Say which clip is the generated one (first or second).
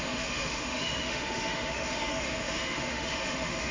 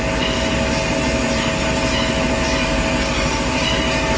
first